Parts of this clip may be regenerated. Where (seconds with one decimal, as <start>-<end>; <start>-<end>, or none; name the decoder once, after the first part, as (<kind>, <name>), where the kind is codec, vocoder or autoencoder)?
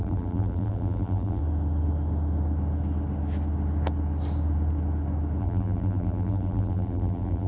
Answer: 0.0-1.4 (vocoder, BigVGAN v2); 5.4-7.5